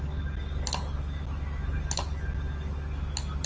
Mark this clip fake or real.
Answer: real